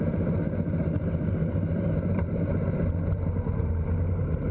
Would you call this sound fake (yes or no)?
no